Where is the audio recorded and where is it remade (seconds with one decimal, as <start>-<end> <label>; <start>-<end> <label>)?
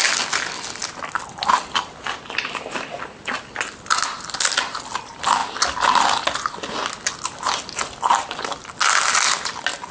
0.0-9.9 recorded